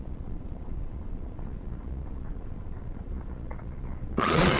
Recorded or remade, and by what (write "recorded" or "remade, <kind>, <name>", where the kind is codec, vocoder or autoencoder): remade, vocoder, Vocos